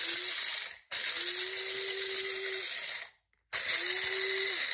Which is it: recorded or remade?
recorded